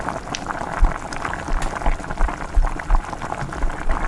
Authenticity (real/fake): real